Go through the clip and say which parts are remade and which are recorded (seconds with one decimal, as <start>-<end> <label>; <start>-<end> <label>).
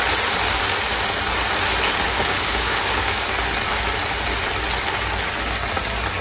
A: 0.0-2.2 recorded; 2.2-3.3 remade; 3.3-6.2 recorded